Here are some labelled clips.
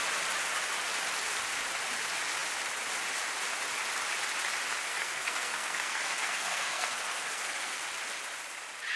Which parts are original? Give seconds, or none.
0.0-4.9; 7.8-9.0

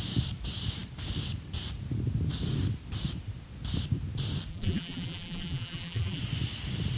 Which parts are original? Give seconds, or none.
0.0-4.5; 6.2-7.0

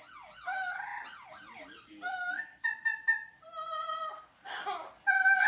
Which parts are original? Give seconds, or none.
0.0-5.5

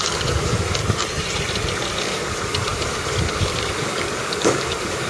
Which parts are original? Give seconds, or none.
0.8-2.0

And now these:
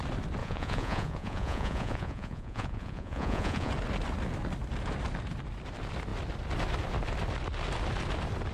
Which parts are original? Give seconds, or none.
0.0-0.4; 3.7-8.5

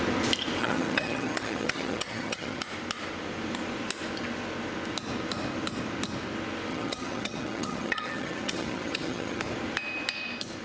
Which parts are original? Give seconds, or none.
0.0-0.6; 2.6-6.7; 9.4-10.6

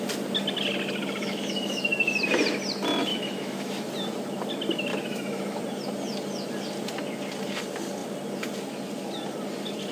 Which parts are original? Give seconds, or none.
0.0-1.2; 1.8-3.1; 3.9-4.9; 5.6-9.9